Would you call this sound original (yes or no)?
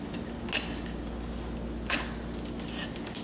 yes